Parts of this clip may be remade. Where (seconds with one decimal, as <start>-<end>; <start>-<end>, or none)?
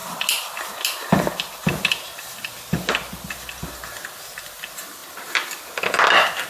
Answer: none